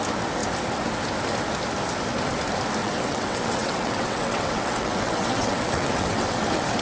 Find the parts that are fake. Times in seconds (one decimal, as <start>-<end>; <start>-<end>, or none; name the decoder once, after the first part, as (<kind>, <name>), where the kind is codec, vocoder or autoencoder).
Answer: 2.8-6.8 (vocoder, WaveNeXt)